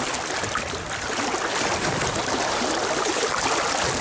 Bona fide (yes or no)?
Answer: no